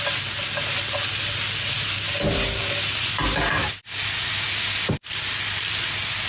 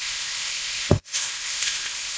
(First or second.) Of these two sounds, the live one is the first